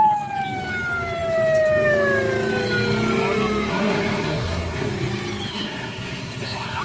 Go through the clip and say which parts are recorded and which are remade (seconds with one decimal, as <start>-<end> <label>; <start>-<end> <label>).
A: 0.0-3.7 recorded; 3.7-4.9 remade; 4.9-5.5 recorded; 5.5-6.8 remade